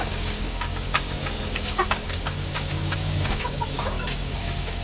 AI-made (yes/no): yes